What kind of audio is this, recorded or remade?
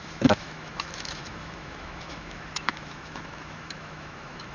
remade